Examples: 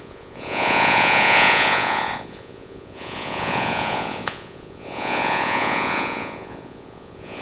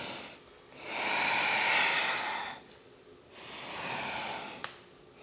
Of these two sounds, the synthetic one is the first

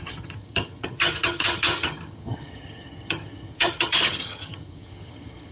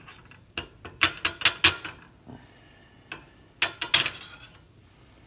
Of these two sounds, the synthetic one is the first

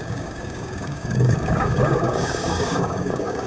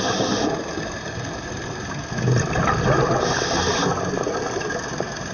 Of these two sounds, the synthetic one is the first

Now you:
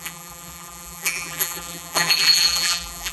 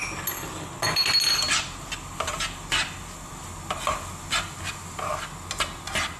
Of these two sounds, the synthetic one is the first